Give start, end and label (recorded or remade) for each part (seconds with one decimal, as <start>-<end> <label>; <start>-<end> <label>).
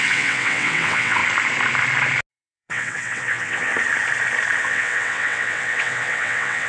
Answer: 0.0-1.2 remade; 1.2-2.3 recorded; 2.3-3.7 remade; 3.7-4.6 recorded; 4.6-6.7 remade